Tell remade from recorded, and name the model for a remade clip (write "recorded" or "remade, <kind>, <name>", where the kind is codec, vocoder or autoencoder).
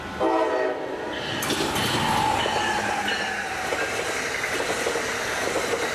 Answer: recorded